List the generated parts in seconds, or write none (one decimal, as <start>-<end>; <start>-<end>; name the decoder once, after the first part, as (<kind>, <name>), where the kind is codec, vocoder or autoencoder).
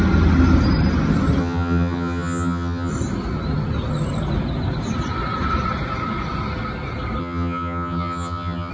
1.4-2.9 (vocoder, HiFi-GAN); 7.2-8.7